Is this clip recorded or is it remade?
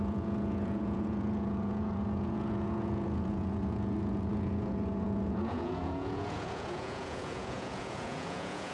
remade